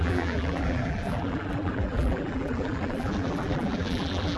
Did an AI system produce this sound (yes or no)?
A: yes